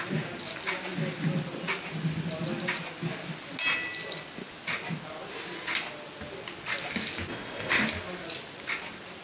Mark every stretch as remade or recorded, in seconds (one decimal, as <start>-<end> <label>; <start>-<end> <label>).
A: 0.0-7.3 recorded; 7.3-7.8 remade; 7.8-9.2 recorded

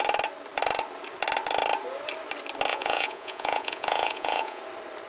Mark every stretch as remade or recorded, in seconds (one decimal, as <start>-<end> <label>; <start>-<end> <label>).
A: 0.0-2.7 recorded; 2.7-4.6 remade; 4.6-5.1 recorded